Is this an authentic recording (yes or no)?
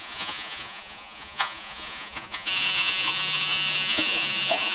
no